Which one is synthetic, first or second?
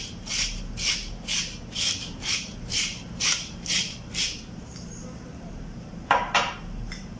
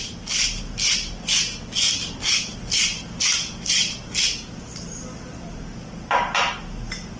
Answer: first